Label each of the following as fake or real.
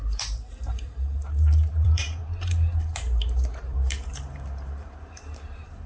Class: fake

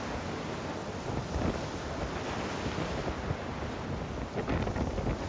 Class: real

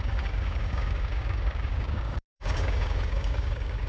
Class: fake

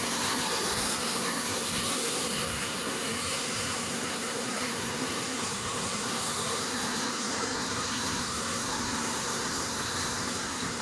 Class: fake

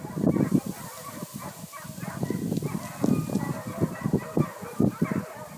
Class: real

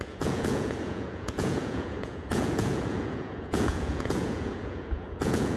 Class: fake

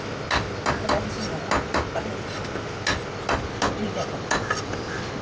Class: real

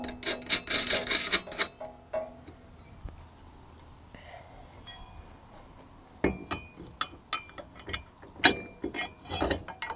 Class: real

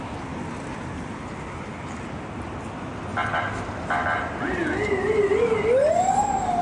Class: real